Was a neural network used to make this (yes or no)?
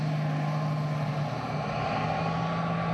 no